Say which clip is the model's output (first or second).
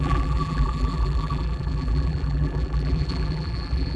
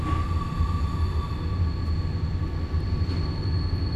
first